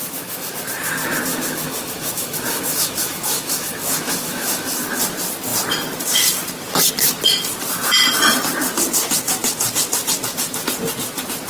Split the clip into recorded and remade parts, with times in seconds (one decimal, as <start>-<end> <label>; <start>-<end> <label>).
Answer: 0.0-0.5 remade; 0.5-1.3 recorded; 1.3-5.0 remade; 5.0-11.5 recorded